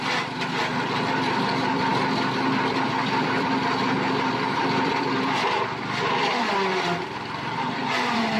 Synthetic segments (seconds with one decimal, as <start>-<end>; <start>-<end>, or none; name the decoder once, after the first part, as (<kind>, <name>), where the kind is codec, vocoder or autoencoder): 0.0-1.9 (vocoder, BigVGAN v2); 2.7-8.4